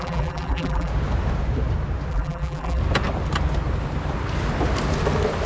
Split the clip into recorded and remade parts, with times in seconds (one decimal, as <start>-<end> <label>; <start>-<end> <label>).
0.0-0.9 remade; 0.9-2.1 recorded; 2.1-2.8 remade; 2.8-5.5 recorded